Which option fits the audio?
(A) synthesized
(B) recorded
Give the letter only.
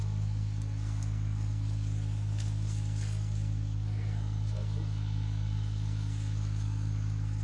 A